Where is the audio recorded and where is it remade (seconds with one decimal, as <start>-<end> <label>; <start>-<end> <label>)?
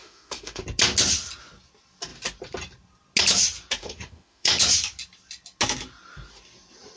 0.0-0.6 remade; 0.6-3.8 recorded; 3.8-4.5 remade; 4.5-7.0 recorded